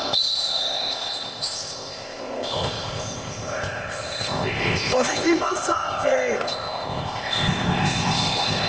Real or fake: fake